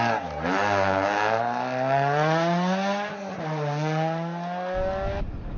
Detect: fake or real real